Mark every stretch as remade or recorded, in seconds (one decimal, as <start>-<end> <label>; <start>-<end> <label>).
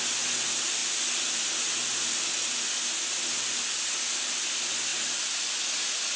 0.0-6.2 remade